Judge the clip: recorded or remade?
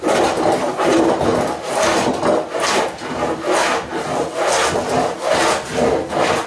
recorded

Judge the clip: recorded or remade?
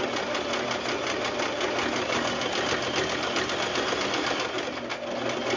recorded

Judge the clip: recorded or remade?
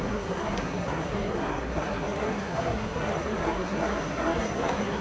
remade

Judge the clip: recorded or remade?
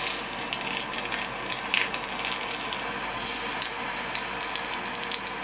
recorded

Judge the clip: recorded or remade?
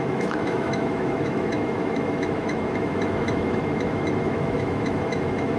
remade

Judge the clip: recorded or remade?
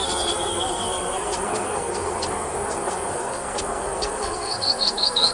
remade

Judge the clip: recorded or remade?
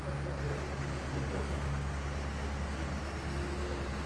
recorded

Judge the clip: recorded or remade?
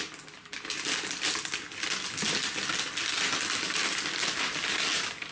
recorded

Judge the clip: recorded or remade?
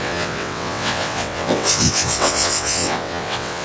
remade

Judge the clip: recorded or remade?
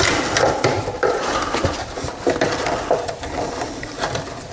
recorded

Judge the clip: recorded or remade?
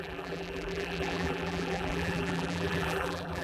remade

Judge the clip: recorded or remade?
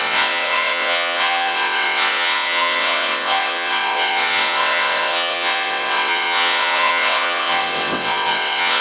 remade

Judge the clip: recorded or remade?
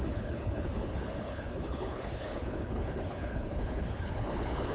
remade